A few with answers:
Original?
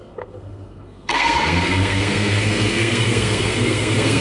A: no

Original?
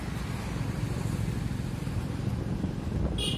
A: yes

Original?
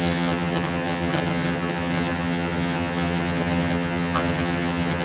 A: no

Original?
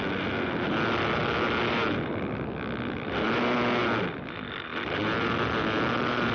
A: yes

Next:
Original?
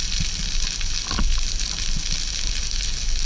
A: yes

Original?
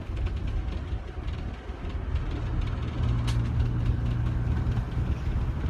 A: yes